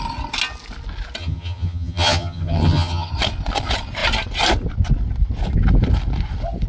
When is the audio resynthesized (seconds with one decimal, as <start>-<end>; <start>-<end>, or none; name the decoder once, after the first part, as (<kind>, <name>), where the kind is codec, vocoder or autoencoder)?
1.2-3.1 (vocoder, HiFi-GAN)